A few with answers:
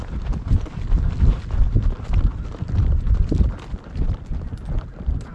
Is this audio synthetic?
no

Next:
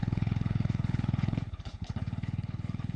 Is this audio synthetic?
yes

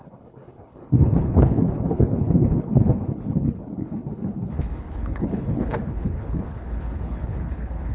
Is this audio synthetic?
yes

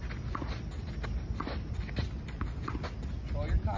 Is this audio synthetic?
no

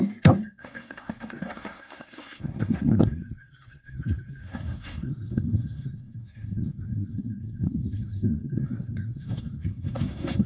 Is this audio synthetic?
yes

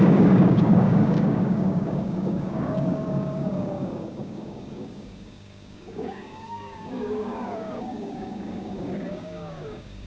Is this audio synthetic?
yes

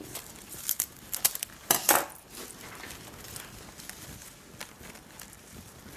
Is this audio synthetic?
no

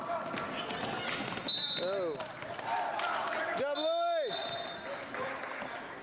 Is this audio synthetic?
no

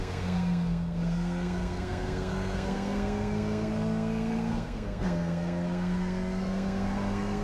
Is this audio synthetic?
yes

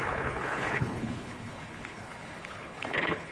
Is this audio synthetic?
yes